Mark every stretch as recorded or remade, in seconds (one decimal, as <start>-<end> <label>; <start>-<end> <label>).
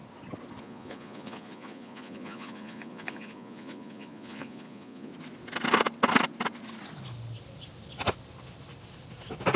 0.0-0.6 recorded; 0.6-5.1 remade; 5.1-9.6 recorded